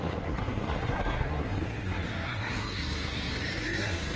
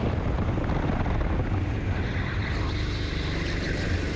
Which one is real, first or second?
second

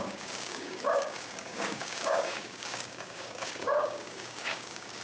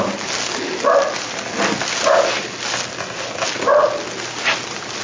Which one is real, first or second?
second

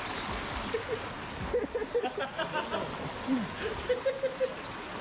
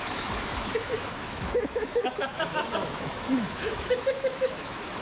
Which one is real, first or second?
first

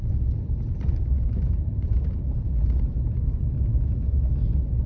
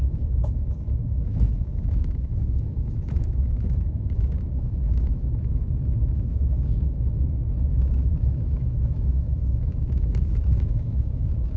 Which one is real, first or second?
first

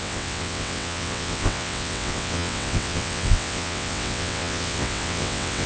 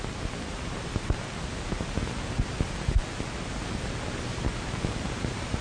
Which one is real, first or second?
second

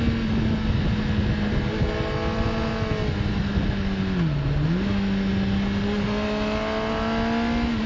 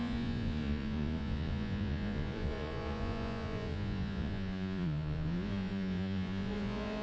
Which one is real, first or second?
first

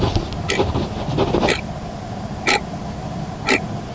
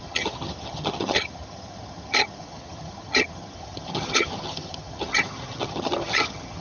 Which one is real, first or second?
first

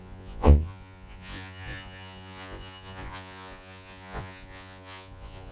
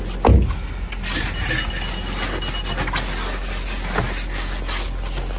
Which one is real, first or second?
second